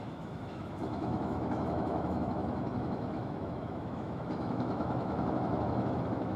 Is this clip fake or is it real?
fake